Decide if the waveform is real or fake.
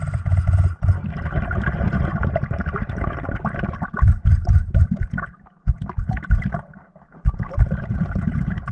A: real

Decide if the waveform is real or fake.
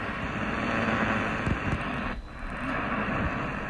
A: real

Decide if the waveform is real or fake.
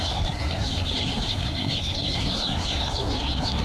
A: fake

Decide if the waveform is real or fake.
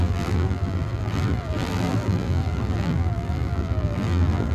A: fake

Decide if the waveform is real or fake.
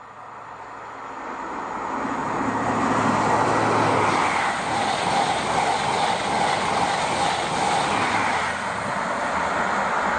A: real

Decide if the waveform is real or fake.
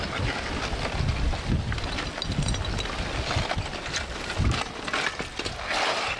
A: real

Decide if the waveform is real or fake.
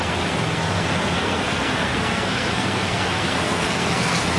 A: fake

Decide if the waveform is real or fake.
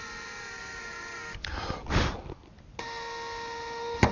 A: real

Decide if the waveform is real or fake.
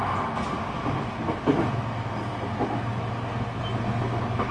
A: real